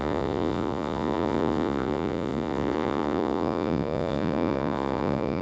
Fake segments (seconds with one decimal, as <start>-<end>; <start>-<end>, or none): 0.0-5.4

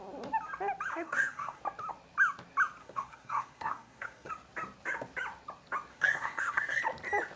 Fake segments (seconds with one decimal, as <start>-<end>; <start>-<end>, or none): 0.9-1.6; 2.8-4.3; 5.9-6.8

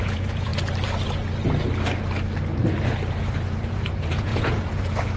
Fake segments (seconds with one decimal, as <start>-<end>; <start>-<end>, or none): 0.0-0.5; 3.6-5.2

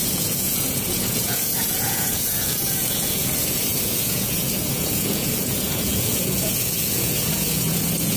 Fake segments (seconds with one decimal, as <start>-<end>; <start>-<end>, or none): 0.0-8.2

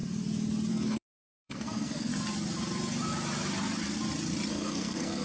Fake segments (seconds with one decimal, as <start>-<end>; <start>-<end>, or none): 0.7-2.1; 4.5-5.2